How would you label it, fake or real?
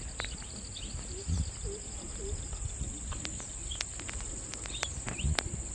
real